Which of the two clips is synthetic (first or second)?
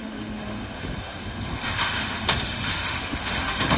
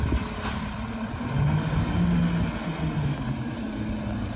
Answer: first